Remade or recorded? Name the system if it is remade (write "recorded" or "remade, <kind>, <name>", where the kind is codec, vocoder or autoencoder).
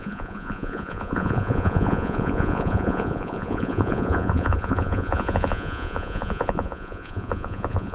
remade, vocoder, Vocos